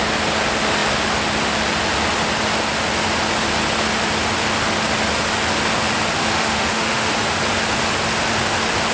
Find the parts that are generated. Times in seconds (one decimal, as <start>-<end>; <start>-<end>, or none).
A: 6.2-7.1